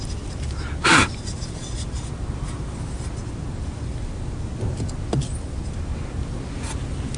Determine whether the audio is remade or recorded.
recorded